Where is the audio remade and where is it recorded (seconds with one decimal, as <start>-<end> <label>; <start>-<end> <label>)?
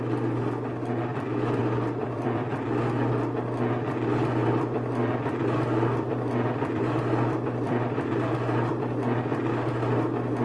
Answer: 0.0-2.0 recorded; 2.0-3.1 remade; 3.1-4.4 recorded; 4.4-9.2 remade; 9.2-10.4 recorded